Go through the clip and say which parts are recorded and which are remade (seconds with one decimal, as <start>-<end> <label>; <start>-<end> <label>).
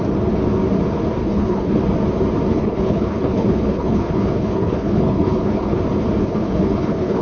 0.0-1.2 recorded; 1.2-1.8 remade; 1.8-2.5 recorded; 2.5-5.8 remade; 5.8-6.2 recorded; 6.2-7.2 remade